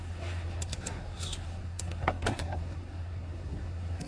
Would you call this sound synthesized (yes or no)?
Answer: yes